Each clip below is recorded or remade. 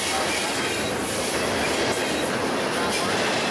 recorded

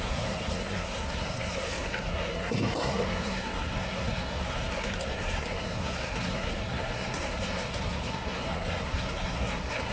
remade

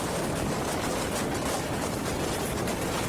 recorded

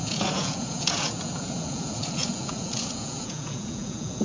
remade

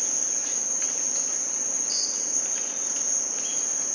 recorded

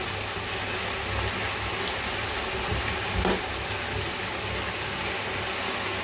recorded